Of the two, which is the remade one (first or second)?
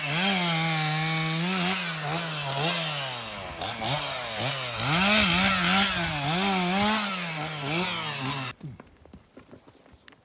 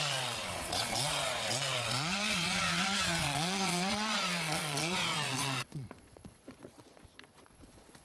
second